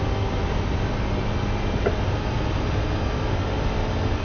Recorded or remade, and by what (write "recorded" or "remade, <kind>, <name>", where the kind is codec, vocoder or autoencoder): recorded